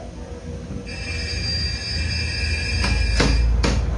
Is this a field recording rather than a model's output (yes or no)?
yes